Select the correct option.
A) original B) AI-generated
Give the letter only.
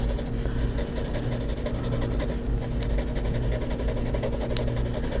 A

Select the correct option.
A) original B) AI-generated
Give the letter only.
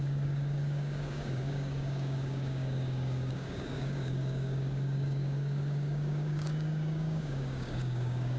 B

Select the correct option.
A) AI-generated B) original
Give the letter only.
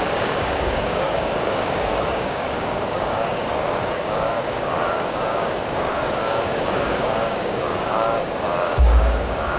A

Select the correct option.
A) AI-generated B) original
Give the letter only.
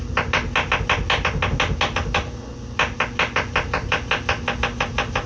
B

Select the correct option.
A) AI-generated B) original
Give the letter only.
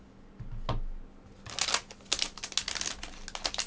B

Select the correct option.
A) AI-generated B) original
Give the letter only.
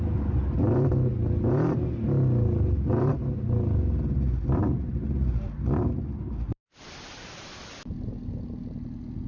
B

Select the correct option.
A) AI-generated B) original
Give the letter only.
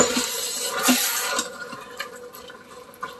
B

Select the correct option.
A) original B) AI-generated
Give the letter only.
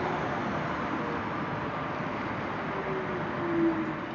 A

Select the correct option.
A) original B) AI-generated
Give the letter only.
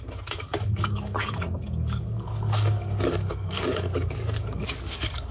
B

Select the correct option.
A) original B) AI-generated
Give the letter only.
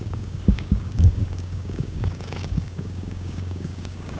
B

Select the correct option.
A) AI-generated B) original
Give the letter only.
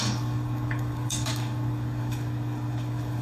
A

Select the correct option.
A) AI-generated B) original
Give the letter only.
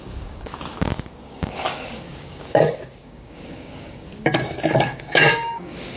A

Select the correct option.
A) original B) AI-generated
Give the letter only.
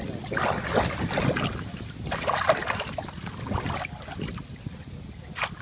A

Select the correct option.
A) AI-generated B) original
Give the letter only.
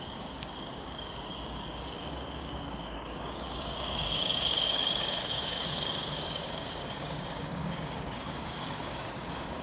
A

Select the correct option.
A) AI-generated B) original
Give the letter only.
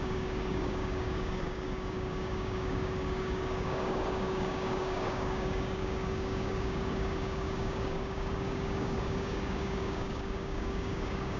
A